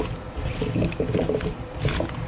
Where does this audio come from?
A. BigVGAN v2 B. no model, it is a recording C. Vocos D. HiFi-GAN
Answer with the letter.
B